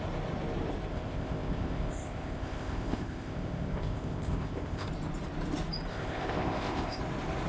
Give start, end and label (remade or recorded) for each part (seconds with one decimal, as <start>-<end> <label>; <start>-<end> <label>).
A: 0.0-0.9 recorded; 0.9-4.9 remade; 4.9-5.9 recorded; 5.9-7.0 remade; 7.0-7.5 recorded